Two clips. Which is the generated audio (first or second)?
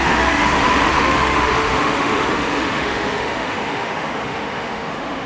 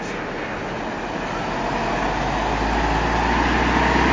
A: first